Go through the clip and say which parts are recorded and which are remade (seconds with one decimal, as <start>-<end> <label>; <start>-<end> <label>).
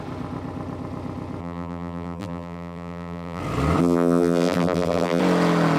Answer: 0.0-1.4 recorded; 1.4-3.4 remade; 3.4-3.8 recorded; 3.8-5.2 remade; 5.2-5.8 recorded